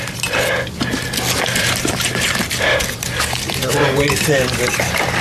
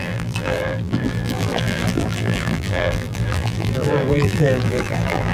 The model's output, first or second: second